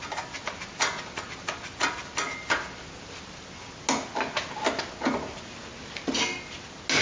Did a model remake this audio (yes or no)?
no